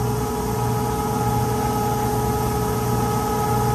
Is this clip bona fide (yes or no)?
yes